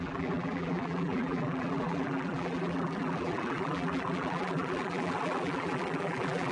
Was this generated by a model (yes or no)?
yes